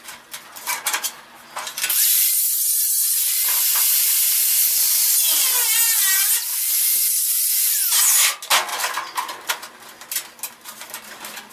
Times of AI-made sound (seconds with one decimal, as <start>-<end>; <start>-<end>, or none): none